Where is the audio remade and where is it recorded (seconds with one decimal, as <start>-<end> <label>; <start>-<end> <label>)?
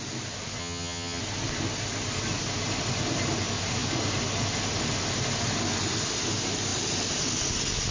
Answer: 0.0-0.6 recorded; 0.6-1.2 remade; 1.2-7.9 recorded